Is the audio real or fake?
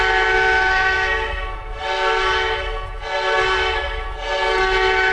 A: fake